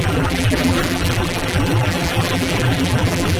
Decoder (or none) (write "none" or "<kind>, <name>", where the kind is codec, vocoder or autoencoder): vocoder, BigVGAN v2